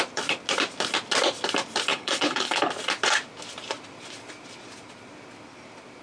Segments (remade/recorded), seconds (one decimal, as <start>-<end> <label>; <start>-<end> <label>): 0.0-1.9 recorded; 1.9-2.7 remade; 2.7-6.0 recorded